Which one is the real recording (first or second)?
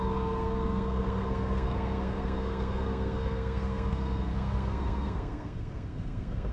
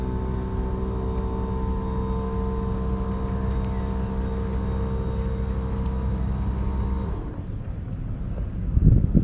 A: second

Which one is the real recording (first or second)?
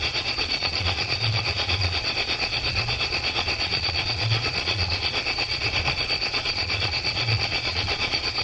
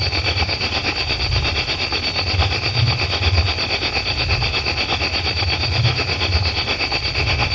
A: second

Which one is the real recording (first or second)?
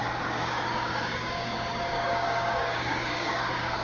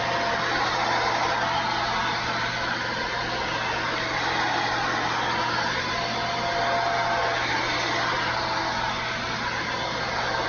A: second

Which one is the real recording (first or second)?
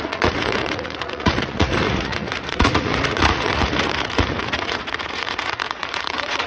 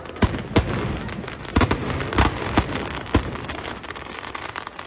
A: second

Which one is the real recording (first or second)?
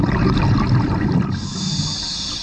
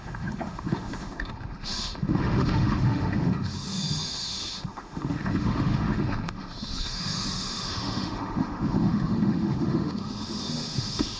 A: first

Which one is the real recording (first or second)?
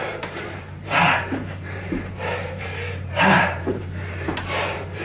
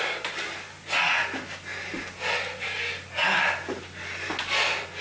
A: second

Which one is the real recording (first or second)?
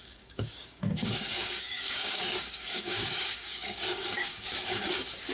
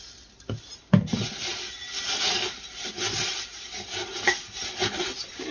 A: second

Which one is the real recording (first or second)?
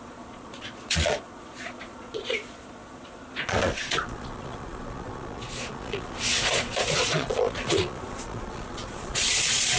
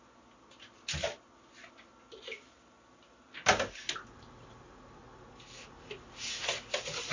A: second